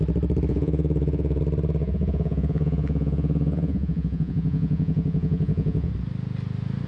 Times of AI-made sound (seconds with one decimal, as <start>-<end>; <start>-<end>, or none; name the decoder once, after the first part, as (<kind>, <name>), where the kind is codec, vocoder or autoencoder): 0.5-1.4 (vocoder, Vocos); 1.8-5.9